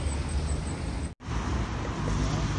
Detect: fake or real real